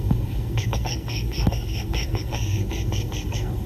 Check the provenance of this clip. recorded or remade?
remade